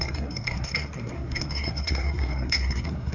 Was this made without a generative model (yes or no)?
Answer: no